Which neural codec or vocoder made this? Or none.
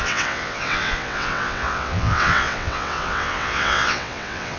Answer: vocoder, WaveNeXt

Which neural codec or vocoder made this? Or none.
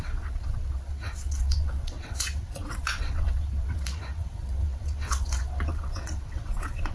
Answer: vocoder, WaveNeXt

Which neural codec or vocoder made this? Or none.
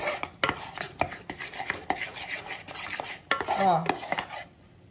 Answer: none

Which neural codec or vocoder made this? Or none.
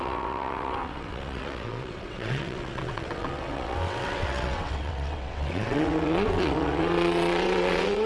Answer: vocoder, WaveNeXt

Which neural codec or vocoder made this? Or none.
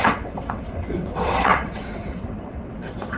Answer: vocoder, WaveNeXt